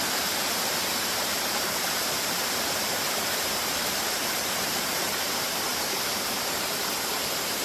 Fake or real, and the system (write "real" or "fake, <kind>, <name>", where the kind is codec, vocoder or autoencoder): fake, vocoder, BigVGAN v2